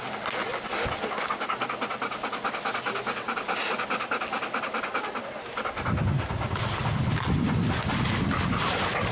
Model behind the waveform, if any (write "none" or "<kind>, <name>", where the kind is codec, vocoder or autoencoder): none